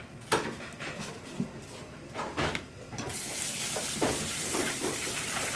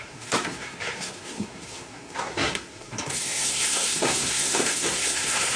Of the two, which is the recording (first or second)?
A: first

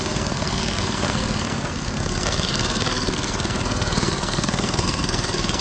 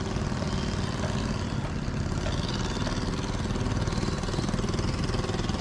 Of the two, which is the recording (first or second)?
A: second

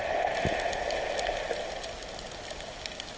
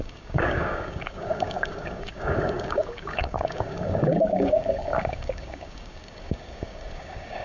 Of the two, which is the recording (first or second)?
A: first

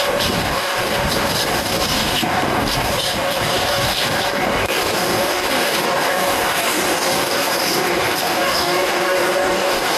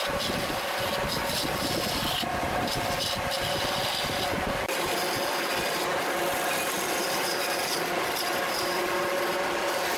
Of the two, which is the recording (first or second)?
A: second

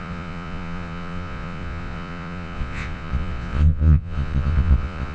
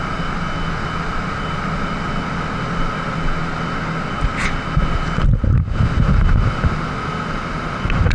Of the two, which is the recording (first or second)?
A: second